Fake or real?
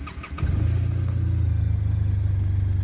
real